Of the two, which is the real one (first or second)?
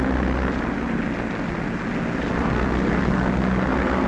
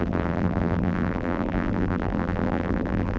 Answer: first